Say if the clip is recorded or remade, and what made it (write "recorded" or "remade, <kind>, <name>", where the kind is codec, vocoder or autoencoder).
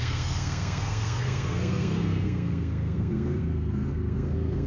remade, codec, SNAC